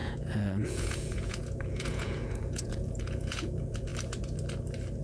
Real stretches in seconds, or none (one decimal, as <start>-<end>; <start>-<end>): 3.9-5.0